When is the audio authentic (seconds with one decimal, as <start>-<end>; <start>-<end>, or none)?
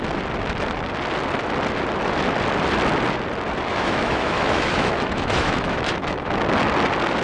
0.0-3.7; 6.3-7.2